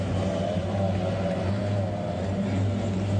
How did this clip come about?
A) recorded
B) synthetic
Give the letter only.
A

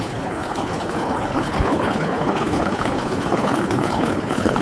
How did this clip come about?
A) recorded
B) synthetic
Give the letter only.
B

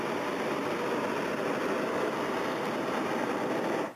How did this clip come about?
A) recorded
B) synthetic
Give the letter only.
B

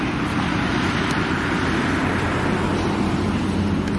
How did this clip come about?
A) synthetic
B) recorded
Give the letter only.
B